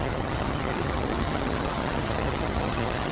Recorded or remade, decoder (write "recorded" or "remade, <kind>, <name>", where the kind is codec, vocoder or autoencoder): remade, vocoder, HiFi-GAN